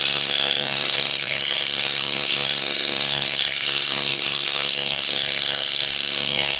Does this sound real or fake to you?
fake